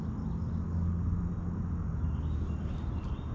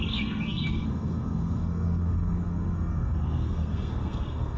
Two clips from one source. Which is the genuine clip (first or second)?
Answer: first